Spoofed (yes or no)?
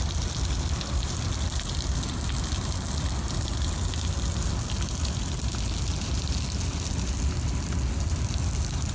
no